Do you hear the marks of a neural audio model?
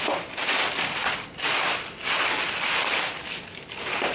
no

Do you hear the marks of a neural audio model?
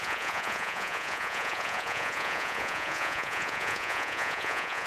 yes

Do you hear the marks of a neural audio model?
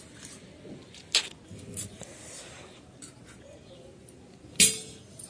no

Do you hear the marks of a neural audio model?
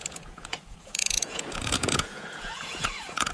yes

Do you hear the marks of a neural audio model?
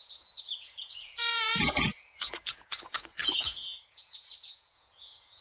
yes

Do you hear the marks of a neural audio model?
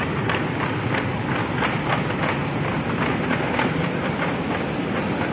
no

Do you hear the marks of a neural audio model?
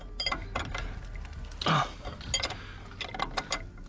no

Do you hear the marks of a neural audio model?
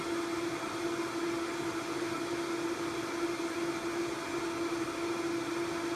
no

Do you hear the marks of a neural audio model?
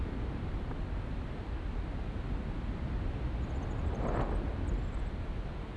no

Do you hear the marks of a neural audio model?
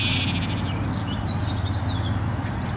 no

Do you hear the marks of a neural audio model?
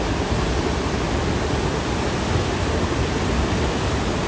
no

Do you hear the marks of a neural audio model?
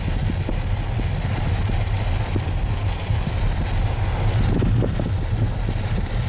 no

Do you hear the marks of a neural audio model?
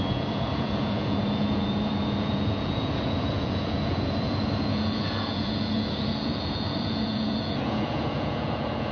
yes